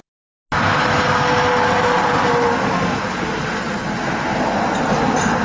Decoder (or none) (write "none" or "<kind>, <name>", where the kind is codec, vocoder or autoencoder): none